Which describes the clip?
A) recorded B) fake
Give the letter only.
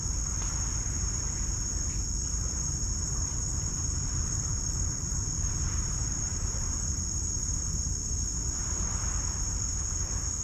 B